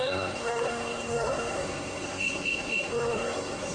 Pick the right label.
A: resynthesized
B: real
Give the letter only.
A